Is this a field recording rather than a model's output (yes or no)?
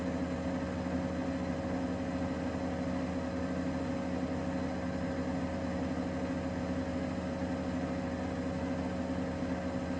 yes